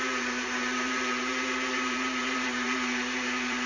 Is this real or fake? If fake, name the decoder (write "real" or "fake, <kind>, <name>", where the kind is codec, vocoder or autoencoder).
fake, vocoder, BigVGAN v2